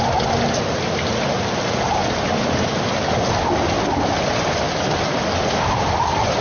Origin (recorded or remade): recorded